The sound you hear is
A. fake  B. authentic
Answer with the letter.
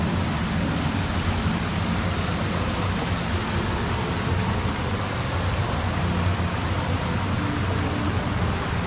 B